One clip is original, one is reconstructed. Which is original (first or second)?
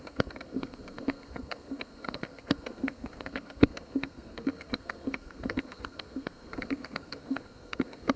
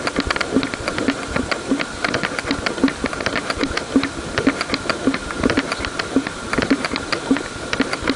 second